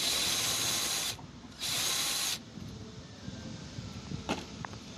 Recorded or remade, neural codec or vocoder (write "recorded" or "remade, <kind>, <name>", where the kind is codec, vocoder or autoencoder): recorded